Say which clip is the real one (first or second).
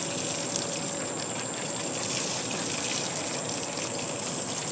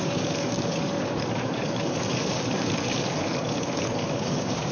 first